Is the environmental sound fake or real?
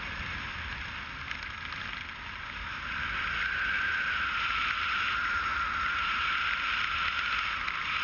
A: real